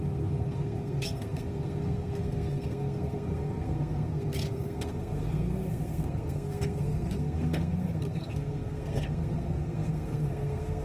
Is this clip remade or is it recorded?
remade